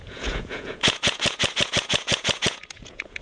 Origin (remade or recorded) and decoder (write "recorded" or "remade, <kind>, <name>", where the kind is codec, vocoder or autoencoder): remade, vocoder, Vocos